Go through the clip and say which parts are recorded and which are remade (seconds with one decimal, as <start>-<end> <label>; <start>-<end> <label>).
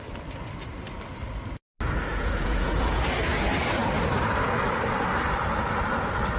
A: 0.0-2.1 recorded; 2.1-3.0 remade; 3.0-6.4 recorded